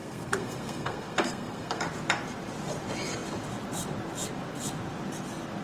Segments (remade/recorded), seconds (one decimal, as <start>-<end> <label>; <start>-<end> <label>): 0.0-1.8 remade; 1.8-5.6 recorded